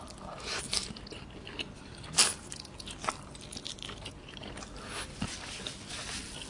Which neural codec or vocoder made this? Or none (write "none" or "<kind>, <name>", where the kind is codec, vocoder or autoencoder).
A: none